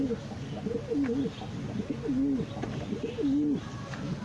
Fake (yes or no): no